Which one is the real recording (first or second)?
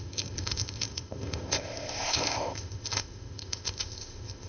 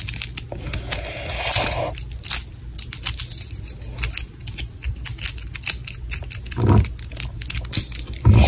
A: second